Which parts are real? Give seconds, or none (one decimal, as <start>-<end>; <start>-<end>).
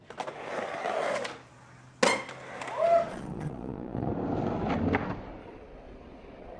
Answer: 0.0-3.1; 4.1-5.4